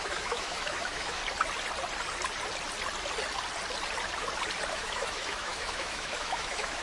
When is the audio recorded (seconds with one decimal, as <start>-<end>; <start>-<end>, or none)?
1.2-4.7